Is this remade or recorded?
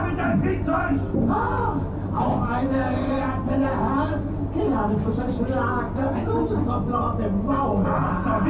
recorded